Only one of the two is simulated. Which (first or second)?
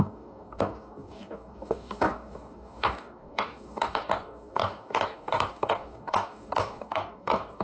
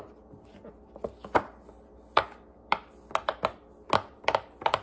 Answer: first